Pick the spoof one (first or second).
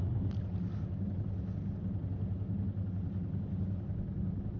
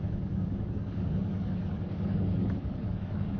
second